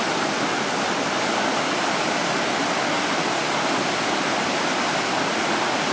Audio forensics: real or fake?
real